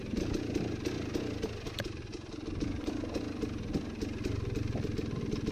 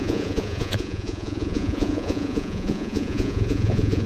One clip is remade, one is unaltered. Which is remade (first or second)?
second